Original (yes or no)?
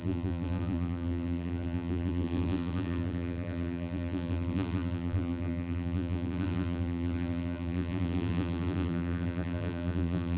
no